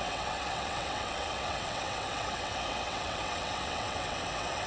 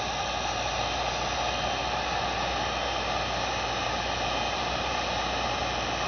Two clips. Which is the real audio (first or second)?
second